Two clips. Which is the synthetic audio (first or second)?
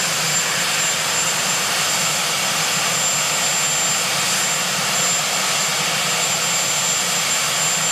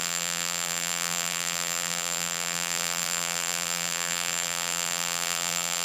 second